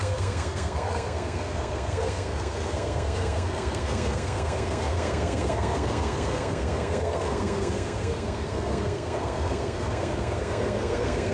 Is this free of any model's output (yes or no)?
no